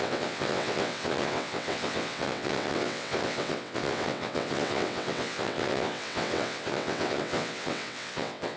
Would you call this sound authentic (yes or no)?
no